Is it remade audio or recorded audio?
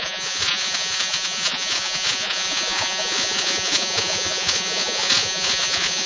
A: remade